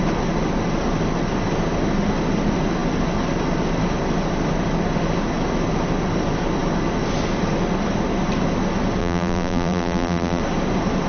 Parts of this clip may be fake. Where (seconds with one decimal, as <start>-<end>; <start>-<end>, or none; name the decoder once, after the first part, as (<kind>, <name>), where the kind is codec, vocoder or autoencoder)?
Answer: 9.0-10.4 (vocoder, BigVGAN v2)